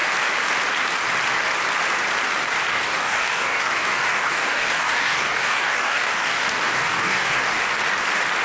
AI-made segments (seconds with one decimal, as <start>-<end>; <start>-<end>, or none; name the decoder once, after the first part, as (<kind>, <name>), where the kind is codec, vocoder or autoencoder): 2.7-7.6 (codec, DAC)